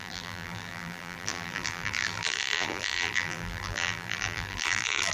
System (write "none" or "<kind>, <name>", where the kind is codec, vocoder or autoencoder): vocoder, BigVGAN v2